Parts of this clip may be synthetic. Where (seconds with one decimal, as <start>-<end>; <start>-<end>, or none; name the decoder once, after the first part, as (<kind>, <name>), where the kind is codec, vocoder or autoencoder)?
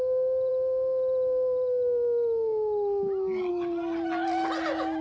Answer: none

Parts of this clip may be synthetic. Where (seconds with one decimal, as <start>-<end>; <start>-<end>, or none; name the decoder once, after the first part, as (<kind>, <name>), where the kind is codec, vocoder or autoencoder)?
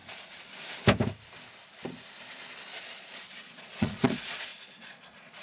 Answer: 2.8-5.4 (vocoder, Vocos)